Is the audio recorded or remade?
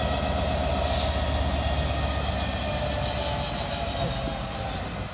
recorded